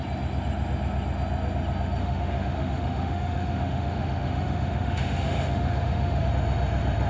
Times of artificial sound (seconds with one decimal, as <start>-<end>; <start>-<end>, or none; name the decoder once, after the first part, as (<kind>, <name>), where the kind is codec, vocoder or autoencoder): 2.0-6.3 (autoencoder, DAC-VAE)